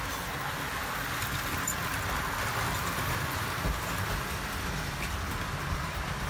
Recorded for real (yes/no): yes